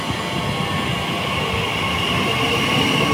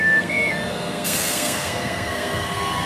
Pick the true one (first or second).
first